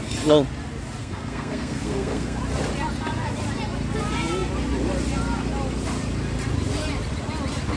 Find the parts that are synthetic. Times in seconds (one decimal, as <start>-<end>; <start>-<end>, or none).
1.0-2.4